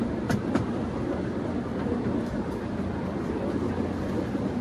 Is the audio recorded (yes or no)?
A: yes